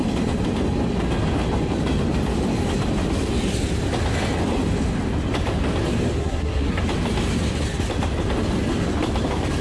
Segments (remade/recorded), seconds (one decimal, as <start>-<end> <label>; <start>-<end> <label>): 0.0-6.2 recorded; 6.2-6.8 remade; 6.8-9.6 recorded